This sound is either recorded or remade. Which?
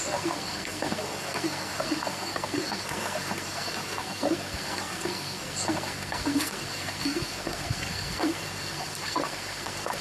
remade